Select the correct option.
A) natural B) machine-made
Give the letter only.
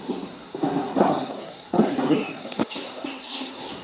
B